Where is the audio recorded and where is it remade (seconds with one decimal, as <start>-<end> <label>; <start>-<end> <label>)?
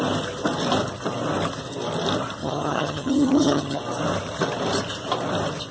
0.0-2.4 recorded; 2.4-3.8 remade; 3.8-5.7 recorded